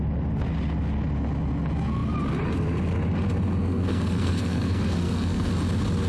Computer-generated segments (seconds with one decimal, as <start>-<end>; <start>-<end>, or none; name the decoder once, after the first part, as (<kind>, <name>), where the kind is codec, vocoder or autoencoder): 3.6-5.5 (codec, SNAC)